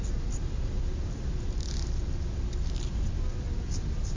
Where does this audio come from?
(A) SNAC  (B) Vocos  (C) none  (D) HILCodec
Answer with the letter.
C